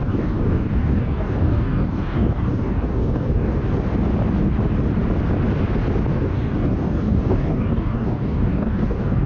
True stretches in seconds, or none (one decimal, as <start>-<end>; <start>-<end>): 3.6-6.1